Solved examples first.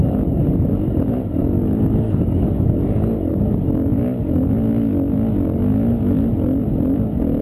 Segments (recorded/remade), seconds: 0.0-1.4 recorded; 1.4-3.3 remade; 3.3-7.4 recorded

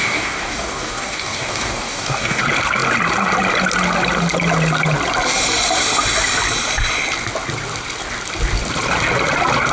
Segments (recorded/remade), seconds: 0.0-2.4 remade; 2.4-9.7 recorded

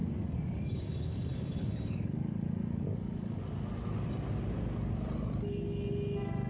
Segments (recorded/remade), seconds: 0.0-3.4 remade; 3.4-6.5 recorded

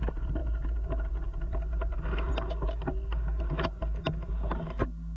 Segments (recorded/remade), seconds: 0.0-5.2 recorded

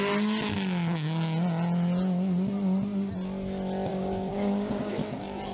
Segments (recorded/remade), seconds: 0.0-3.9 recorded; 3.9-4.9 remade; 4.9-5.5 recorded

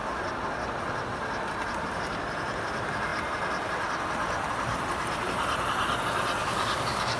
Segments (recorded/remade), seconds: 0.0-6.4 recorded; 6.4-7.2 remade

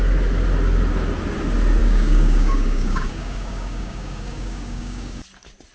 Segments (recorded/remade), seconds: 0.0-1.8 recorded; 1.8-5.2 remade; 5.2-5.7 recorded